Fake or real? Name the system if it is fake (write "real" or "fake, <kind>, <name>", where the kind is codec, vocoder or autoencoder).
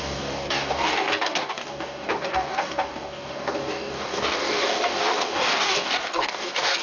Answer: fake, codec, DAC